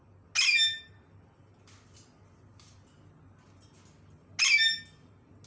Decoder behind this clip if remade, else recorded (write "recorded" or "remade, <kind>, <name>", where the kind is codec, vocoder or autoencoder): recorded